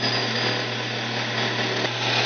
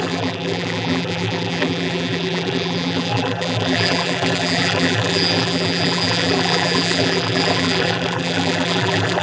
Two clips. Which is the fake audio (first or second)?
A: second